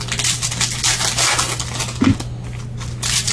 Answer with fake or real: real